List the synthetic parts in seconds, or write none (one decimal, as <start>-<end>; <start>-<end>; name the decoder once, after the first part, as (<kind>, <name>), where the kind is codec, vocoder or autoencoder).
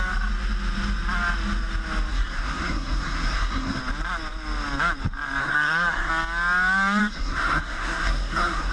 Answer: 2.1-3.8 (codec, SNAC); 5.4-6.1; 7.0-8.7